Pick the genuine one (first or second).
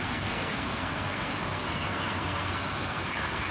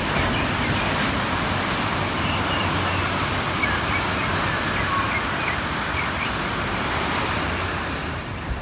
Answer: second